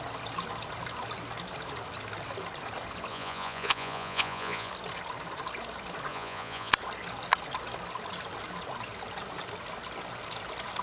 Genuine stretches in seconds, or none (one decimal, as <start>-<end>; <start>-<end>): 0.0-3.1; 4.7-6.1; 6.7-10.8